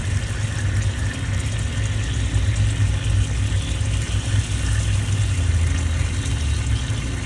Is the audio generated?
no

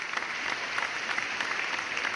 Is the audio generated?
no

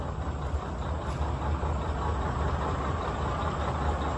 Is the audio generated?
no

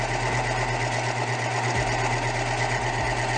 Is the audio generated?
no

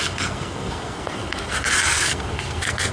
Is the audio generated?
yes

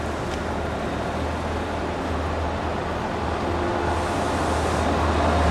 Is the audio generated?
no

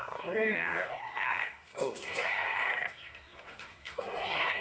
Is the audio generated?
yes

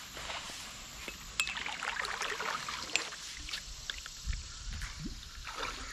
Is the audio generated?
no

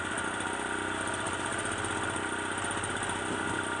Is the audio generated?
no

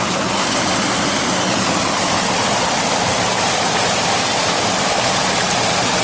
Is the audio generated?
no